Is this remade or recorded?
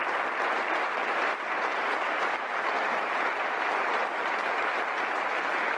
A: recorded